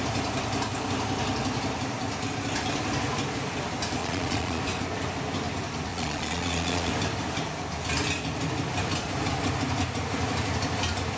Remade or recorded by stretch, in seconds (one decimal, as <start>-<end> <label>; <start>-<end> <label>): 0.0-4.0 recorded; 4.0-4.6 remade; 4.6-5.9 recorded; 5.9-6.9 remade; 6.9-11.2 recorded